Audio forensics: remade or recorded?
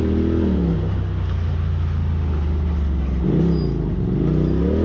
recorded